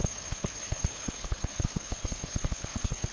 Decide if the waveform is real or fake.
fake